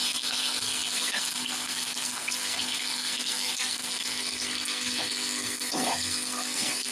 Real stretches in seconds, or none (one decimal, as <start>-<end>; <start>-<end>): none